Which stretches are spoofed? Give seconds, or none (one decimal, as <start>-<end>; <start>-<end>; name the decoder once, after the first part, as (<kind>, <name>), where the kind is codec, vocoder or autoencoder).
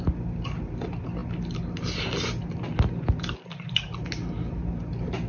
none